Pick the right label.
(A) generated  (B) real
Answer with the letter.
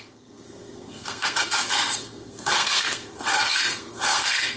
A